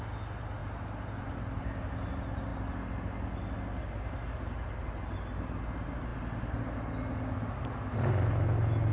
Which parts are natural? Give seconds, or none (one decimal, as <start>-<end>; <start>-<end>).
0.0-8.9